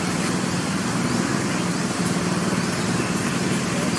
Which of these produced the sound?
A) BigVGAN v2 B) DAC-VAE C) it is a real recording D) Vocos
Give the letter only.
C